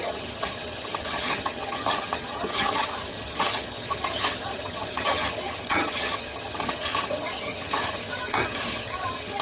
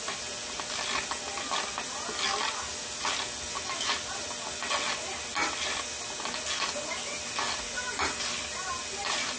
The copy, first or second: first